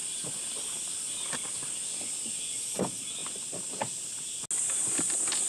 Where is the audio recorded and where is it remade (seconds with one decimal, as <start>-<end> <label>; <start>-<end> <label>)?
0.0-5.5 recorded

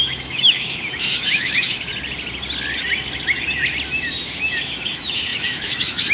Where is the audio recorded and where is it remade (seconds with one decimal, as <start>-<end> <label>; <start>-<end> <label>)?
0.0-1.9 remade; 1.9-4.1 recorded; 4.1-6.1 remade

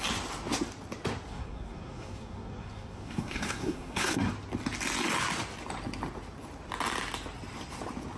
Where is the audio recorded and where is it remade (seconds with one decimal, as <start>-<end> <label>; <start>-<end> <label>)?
0.0-1.3 recorded; 1.3-4.3 remade; 4.3-8.2 recorded

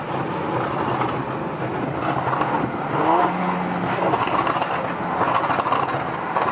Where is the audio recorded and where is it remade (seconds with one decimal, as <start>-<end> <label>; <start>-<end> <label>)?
0.0-6.5 recorded